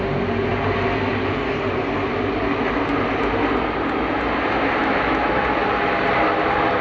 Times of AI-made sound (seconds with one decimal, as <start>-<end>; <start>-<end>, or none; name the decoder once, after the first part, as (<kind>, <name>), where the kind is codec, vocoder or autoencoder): 4.8-5.4 (autoencoder, DAC-VAE)